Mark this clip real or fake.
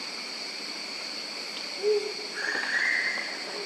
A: real